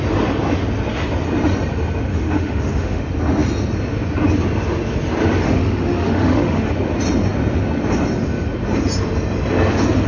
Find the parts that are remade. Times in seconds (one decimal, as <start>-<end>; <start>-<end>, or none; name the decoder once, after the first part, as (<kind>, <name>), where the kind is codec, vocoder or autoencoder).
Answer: 2.1-3.0 (autoencoder, DAC-VAE); 5.4-6.7